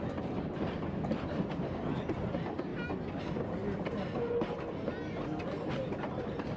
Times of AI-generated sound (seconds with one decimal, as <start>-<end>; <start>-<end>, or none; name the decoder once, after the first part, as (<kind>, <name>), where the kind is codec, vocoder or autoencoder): none